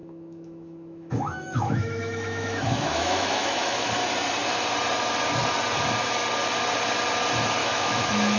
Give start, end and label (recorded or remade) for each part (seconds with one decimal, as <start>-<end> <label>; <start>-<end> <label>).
0.0-3.9 remade; 3.9-7.6 recorded; 7.6-8.4 remade